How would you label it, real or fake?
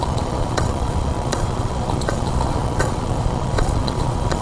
fake